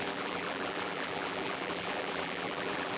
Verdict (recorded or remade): remade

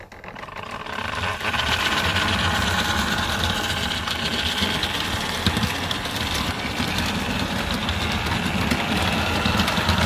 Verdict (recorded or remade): recorded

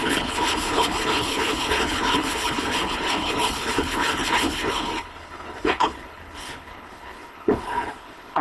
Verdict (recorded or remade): remade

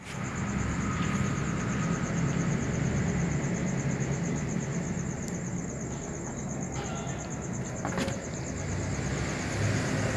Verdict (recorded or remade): recorded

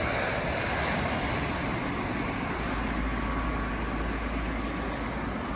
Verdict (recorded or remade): recorded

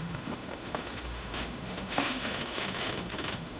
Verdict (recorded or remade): remade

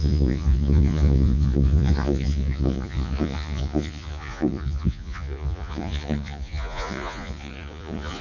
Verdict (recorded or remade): remade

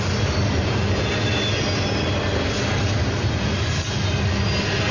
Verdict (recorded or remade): recorded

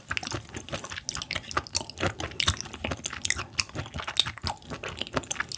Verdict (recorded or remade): recorded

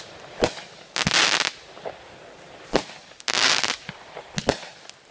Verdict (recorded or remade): recorded